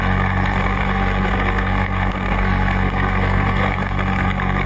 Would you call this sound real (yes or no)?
no